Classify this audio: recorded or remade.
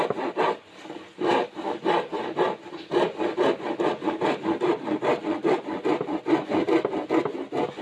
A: recorded